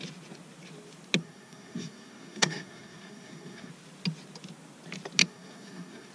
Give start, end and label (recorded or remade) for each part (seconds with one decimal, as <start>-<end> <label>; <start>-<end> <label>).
0.0-1.2 recorded; 1.2-3.7 remade; 3.7-5.2 recorded; 5.2-6.1 remade